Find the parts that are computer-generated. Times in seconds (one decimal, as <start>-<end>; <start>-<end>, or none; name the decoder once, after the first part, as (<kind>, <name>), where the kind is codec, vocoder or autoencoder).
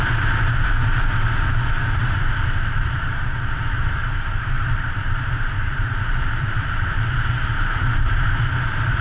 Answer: 2.0-3.2 (vocoder, BigVGAN v2); 4.0-8.4